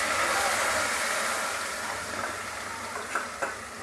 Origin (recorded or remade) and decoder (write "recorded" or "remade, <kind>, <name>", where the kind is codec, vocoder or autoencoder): recorded